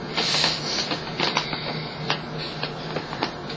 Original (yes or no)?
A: yes